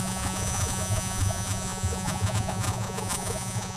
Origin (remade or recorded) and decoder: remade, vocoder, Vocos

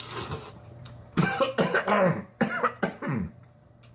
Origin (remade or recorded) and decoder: remade, vocoder, BigVGAN v2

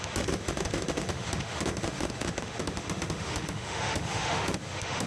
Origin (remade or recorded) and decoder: remade, autoencoder, DAC-VAE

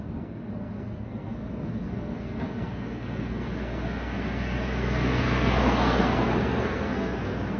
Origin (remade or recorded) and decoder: remade, codec, SNAC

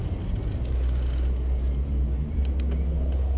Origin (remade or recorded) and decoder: recorded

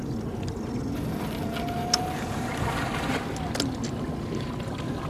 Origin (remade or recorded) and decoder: recorded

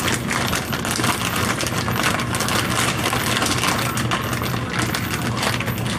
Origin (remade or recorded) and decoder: recorded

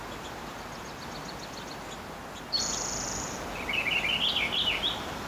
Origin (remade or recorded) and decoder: recorded